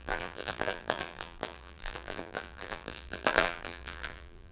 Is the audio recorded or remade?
remade